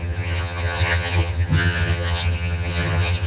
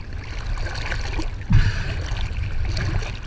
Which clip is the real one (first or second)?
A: second